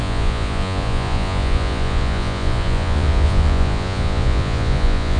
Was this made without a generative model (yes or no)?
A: no